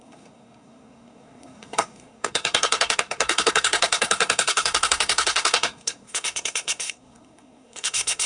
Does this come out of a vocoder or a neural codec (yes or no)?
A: yes